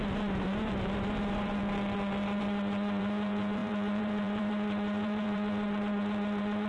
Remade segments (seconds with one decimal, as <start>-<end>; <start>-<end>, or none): 0.0-1.6; 2.4-6.7